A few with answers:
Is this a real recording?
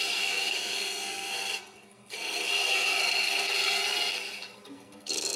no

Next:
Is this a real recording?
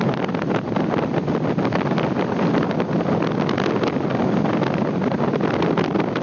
yes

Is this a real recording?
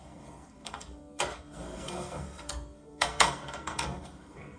no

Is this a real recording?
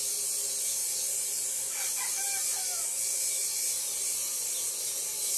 yes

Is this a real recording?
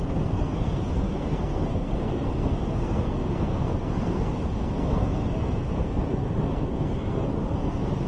no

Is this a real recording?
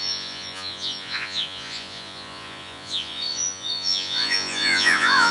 no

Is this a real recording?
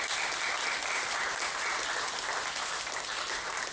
yes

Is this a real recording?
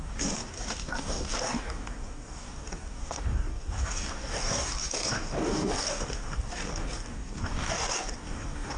no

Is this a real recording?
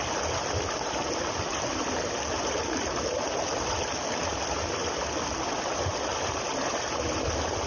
yes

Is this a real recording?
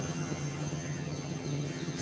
no